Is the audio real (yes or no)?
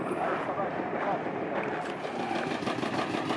yes